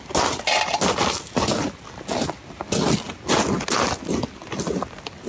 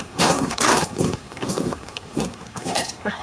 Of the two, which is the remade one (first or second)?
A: second